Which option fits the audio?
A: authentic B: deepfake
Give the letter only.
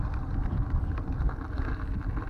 A